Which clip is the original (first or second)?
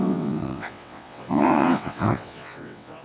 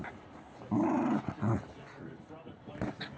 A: second